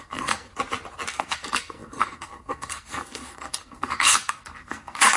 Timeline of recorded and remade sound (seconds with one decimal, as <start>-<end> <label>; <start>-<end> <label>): 0.0-0.5 remade; 0.5-1.1 recorded; 1.1-5.2 remade